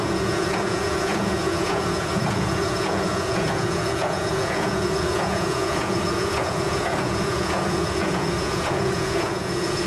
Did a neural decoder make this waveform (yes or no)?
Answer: yes